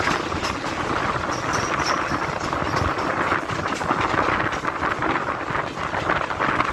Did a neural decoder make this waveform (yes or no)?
no